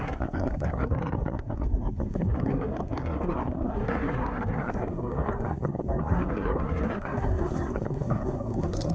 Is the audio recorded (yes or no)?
no